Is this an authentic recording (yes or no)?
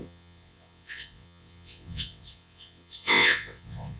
no